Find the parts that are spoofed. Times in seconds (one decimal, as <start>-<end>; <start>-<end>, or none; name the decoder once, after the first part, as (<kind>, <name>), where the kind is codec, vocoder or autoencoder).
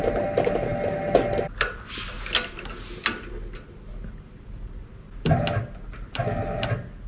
none